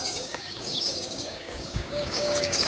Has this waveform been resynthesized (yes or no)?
yes